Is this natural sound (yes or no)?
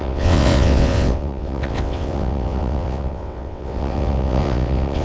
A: no